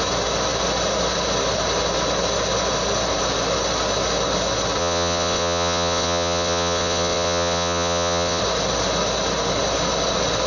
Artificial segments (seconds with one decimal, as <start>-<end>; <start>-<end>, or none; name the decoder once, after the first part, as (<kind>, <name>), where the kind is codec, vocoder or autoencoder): 4.8-8.4 (vocoder, WaveNeXt)